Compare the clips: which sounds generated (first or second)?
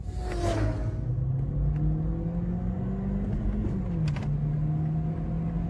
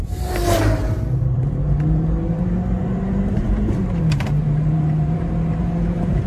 second